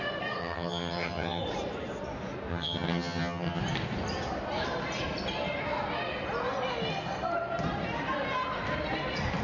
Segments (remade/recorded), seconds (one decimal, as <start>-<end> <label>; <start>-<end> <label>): 0.0-0.4 recorded; 0.4-1.4 remade; 1.4-2.5 recorded; 2.5-3.6 remade; 3.6-9.4 recorded